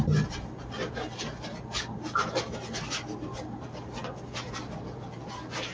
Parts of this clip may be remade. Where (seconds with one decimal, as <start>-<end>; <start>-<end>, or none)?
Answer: 4.0-5.3